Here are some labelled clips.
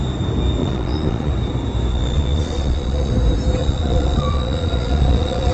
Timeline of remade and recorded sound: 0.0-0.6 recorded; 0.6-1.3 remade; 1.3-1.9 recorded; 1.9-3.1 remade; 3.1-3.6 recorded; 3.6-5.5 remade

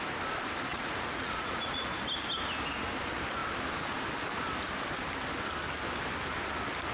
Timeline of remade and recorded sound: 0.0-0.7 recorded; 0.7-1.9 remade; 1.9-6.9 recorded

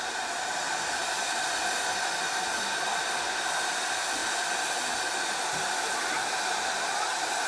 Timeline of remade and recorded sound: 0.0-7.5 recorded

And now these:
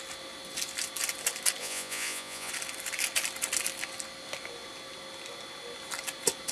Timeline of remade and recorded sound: 0.0-1.6 recorded; 1.6-2.5 remade; 2.5-6.5 recorded

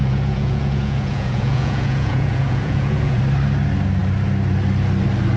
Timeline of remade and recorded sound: 0.0-3.2 remade; 3.2-5.4 recorded

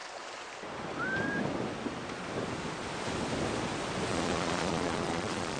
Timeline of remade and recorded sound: 0.0-4.1 recorded; 4.1-5.6 remade

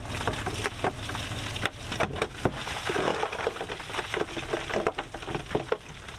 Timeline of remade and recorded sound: 0.0-6.2 recorded

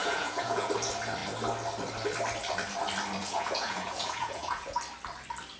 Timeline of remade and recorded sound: 0.0-0.7 remade; 0.7-3.2 recorded; 3.2-4.8 remade; 4.8-5.6 recorded